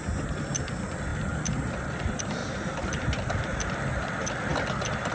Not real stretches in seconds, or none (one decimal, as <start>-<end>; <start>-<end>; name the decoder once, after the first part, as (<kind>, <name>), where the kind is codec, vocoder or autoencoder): 2.4-3.0 (vocoder, BigVGAN v2)